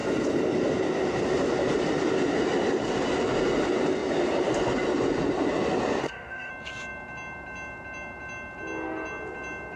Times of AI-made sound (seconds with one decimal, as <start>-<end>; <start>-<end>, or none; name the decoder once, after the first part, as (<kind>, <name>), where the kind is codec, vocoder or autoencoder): 6.0-6.5 (autoencoder, DAC-VAE)